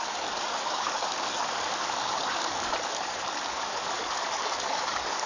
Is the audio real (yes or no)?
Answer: no